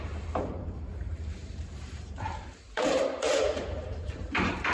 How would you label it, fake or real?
fake